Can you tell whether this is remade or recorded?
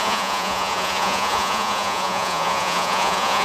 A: remade